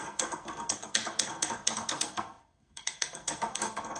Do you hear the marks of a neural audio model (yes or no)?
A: yes